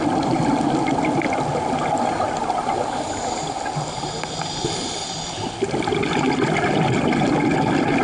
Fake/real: real